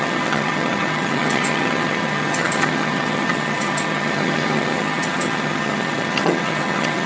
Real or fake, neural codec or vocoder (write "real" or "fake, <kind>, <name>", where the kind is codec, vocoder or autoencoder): fake, vocoder, HiFi-GAN